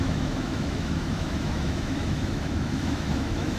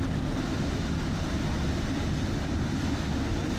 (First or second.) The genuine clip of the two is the second